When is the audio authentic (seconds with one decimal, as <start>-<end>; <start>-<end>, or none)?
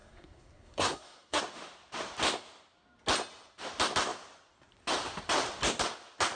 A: 1.4-6.4